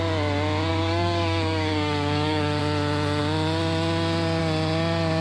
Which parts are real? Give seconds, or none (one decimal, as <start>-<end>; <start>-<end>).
0.0-0.7; 2.6-5.2